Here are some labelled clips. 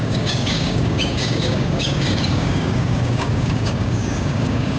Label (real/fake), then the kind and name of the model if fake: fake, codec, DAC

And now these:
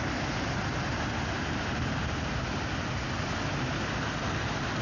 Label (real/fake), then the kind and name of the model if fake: real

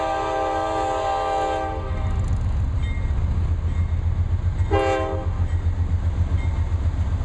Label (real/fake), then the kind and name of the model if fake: real